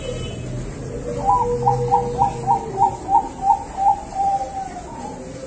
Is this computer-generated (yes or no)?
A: no